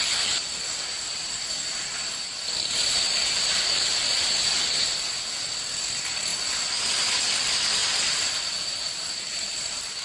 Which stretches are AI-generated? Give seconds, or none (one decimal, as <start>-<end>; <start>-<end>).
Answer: none